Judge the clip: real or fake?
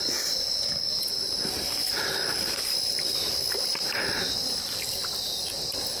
fake